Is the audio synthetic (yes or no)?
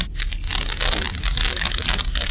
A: no